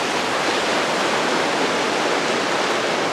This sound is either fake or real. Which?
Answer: real